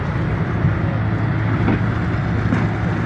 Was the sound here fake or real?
real